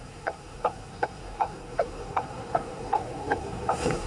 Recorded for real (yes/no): no